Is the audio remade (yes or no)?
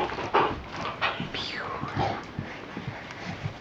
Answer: no